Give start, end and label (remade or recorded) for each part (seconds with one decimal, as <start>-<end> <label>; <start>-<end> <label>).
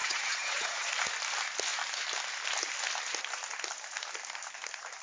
0.0-0.9 remade; 0.9-5.0 recorded